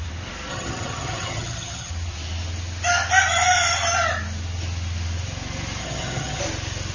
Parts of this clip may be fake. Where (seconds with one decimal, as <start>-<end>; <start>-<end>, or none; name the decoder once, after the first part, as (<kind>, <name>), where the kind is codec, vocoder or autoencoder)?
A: 0.5-1.9 (vocoder, HiFi-GAN); 5.8-6.4